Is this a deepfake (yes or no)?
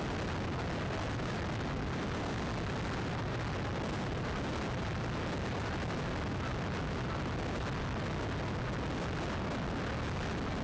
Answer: no